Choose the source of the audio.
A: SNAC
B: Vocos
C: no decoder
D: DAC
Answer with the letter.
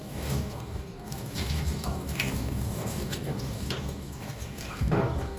D